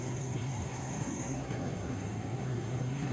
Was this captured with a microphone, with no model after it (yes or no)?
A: no